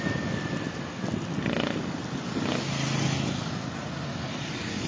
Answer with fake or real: real